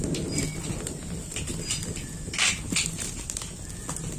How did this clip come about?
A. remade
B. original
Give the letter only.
B